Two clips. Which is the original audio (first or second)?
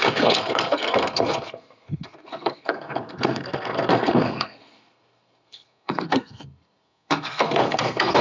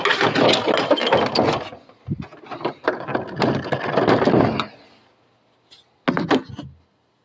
second